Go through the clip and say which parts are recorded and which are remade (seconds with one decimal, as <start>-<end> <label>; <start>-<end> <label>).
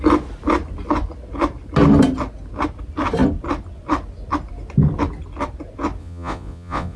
0.0-6.0 recorded; 6.0-7.0 remade